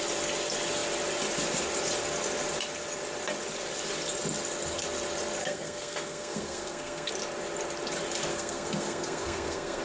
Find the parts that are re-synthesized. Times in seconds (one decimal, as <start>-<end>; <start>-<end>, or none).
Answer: 5.4-7.1; 8.3-9.8